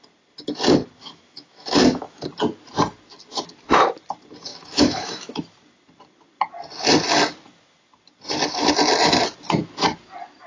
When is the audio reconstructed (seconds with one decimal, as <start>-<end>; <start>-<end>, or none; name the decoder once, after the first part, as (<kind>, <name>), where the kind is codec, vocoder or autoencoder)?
1.0-2.2 (autoencoder, DAC-VAE); 4.5-5.4